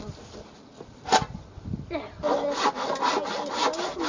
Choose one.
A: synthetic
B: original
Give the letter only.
B